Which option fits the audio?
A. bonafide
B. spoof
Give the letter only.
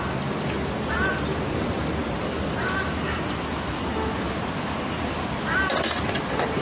A